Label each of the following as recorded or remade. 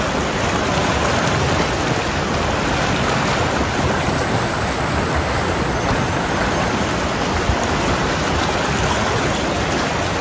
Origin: recorded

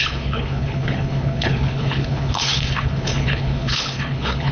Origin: remade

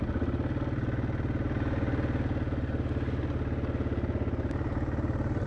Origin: recorded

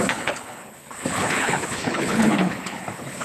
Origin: remade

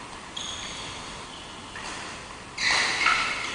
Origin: recorded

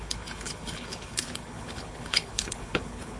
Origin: remade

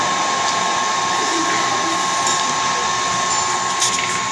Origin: recorded